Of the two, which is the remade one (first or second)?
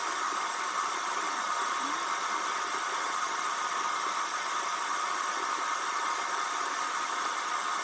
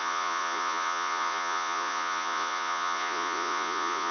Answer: second